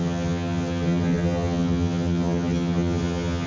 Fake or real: fake